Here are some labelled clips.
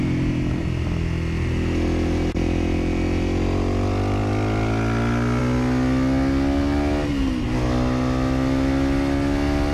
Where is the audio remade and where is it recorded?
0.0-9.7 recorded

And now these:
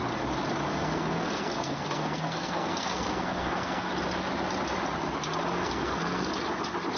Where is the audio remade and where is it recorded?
0.0-0.7 recorded; 0.7-3.9 remade; 3.9-5.6 recorded; 5.6-6.3 remade; 6.3-7.0 recorded

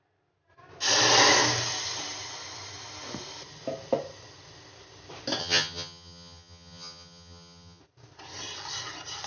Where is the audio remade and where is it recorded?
0.0-5.4 recorded; 5.4-7.8 remade; 7.8-9.3 recorded

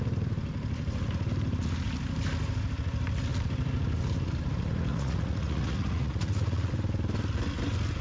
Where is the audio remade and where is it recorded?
0.0-4.9 recorded; 4.9-6.7 remade; 6.7-8.0 recorded

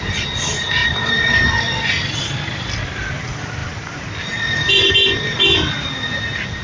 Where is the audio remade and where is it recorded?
0.0-6.6 recorded

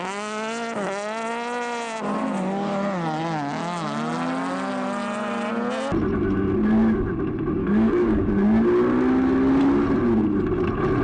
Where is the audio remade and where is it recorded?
0.0-7.6 recorded; 7.6-8.2 remade; 8.2-11.0 recorded